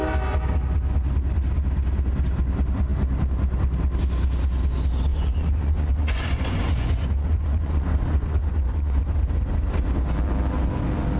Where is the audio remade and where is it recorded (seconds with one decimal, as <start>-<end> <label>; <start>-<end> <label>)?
0.0-5.1 recorded; 5.1-9.3 remade; 9.3-11.2 recorded